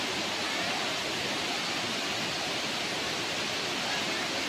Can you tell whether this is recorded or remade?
recorded